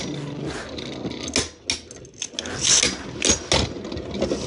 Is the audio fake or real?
real